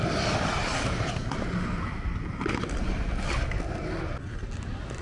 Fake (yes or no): no